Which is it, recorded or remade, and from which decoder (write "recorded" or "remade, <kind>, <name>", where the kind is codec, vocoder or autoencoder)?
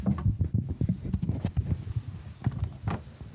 recorded